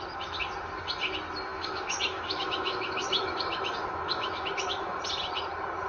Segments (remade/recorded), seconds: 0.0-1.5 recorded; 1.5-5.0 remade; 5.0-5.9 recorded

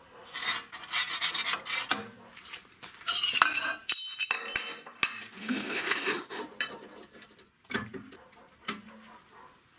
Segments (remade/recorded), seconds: 0.0-5.4 recorded; 5.4-6.4 remade; 6.4-9.8 recorded